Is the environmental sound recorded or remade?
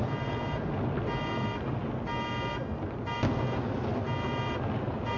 recorded